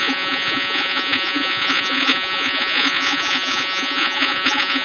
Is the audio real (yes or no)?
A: no